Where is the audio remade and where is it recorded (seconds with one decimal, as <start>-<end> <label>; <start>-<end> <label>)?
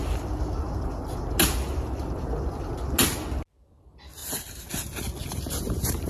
0.0-4.2 recorded; 4.2-4.7 remade; 4.7-5.2 recorded; 5.2-6.1 remade